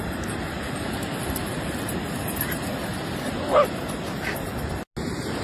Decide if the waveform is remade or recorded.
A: recorded